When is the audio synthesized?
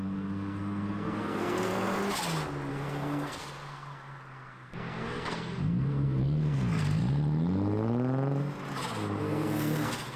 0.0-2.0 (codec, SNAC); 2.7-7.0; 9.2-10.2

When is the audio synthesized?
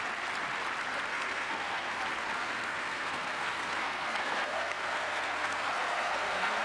1.1-2.0 (codec, SNAC); 2.4-6.6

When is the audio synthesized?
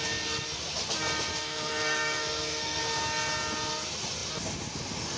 1.3-2.8 (codec, SNAC)